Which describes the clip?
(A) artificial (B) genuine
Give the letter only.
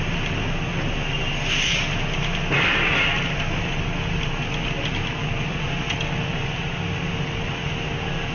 B